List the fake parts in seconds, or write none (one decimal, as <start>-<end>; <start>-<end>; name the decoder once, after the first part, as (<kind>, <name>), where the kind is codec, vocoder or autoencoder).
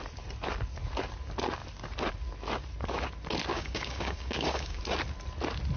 3.5-4.8 (codec, DAC)